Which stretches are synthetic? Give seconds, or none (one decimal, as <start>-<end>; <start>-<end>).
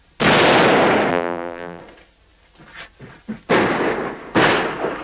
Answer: 1.1-1.8